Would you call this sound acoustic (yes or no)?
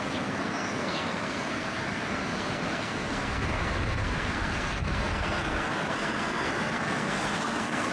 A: no